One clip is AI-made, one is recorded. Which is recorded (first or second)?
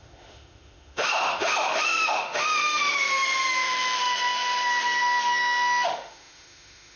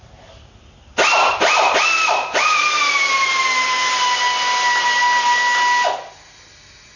second